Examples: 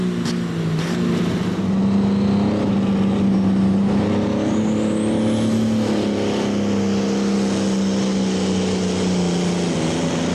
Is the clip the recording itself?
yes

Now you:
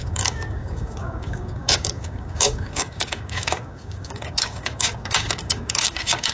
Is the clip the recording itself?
no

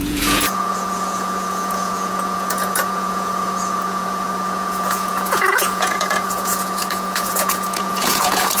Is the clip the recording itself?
no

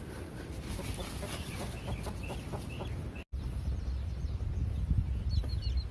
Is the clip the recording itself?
yes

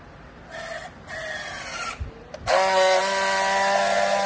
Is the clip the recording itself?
yes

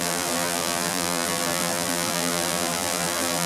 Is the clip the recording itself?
no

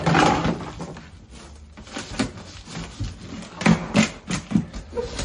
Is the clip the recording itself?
yes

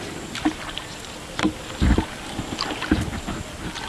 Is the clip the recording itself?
yes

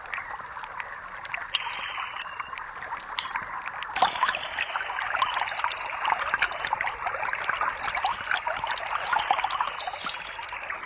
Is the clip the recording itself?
yes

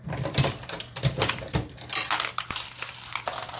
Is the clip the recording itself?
no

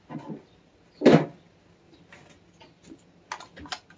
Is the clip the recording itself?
yes